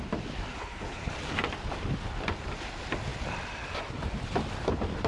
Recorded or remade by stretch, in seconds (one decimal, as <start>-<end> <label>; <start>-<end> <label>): 0.0-0.5 recorded; 0.5-1.1 remade; 1.1-5.1 recorded